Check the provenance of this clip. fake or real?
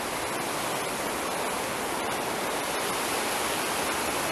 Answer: real